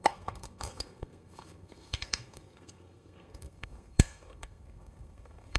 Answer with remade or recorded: remade